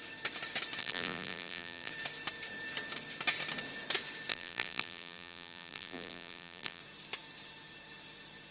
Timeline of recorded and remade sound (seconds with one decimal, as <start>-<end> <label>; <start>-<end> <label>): 0.0-0.8 recorded; 0.8-1.9 remade; 1.9-4.3 recorded; 4.3-6.8 remade; 6.8-8.5 recorded